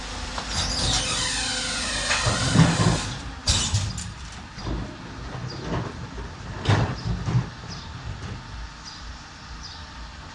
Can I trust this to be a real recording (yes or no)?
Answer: yes